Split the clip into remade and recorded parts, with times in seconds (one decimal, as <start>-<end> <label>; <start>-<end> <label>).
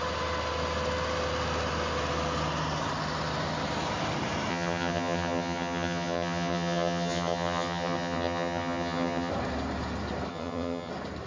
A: 0.0-4.5 recorded; 4.5-9.3 remade; 9.3-10.3 recorded; 10.3-10.9 remade; 10.9-11.3 recorded